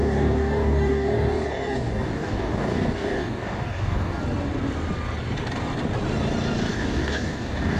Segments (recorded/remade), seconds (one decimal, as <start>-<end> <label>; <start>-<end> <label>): 0.0-4.2 remade; 4.2-6.7 recorded; 6.7-7.8 remade